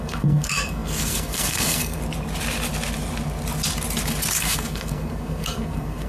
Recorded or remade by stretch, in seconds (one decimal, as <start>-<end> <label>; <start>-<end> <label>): 0.0-2.0 remade; 2.0-4.4 recorded; 4.4-6.1 remade

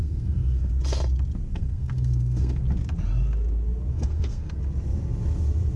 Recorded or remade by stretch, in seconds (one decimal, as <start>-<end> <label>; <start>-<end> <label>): 0.0-0.7 remade; 0.7-1.5 recorded; 1.5-2.6 remade; 2.6-3.9 recorded; 3.9-4.6 remade; 4.6-5.8 recorded